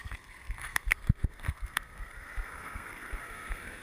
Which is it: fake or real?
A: fake